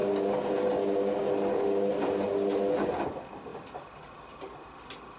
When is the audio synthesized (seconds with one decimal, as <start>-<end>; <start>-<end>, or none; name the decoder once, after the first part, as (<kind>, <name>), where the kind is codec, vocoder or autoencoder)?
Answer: none